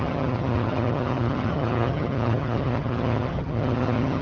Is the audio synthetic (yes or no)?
yes